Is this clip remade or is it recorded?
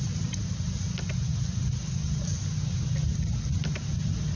recorded